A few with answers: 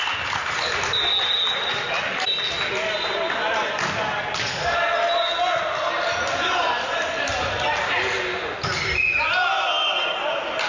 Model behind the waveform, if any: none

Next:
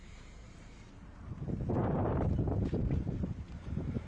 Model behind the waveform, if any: vocoder, BigVGAN v2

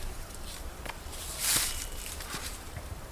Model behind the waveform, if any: vocoder, BigVGAN v2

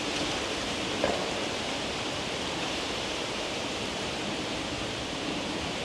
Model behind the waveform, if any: vocoder, BigVGAN v2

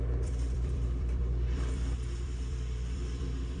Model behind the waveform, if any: vocoder, BigVGAN v2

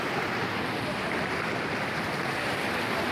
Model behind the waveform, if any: none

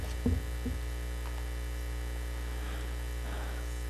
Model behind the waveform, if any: none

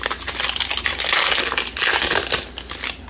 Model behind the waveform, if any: none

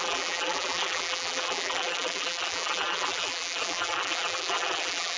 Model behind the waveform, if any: vocoder, BigVGAN v2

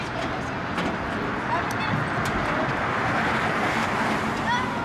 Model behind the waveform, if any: none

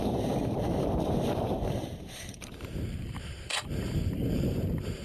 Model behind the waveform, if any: vocoder, BigVGAN v2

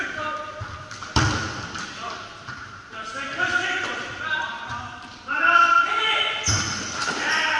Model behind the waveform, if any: vocoder, BigVGAN v2